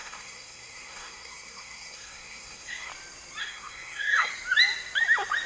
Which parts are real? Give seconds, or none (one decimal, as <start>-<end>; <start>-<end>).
2.9-3.4; 4.3-5.5